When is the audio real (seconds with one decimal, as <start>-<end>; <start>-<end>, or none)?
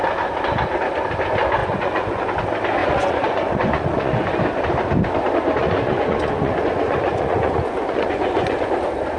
0.0-1.6; 2.3-2.8; 4.4-5.6; 8.7-9.2